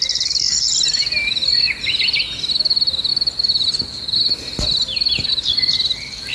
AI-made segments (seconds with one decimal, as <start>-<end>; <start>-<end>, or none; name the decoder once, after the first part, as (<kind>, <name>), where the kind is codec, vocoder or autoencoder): none